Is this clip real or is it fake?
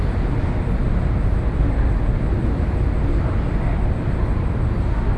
real